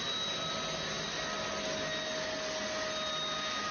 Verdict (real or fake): real